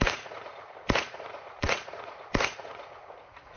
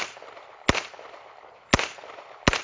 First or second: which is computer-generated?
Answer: first